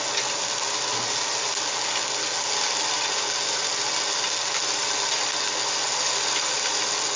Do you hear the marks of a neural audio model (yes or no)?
no